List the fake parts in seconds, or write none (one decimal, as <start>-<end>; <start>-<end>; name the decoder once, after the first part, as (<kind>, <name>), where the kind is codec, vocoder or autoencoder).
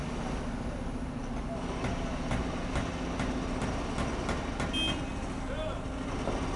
none